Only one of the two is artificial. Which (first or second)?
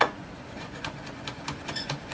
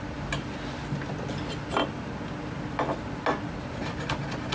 first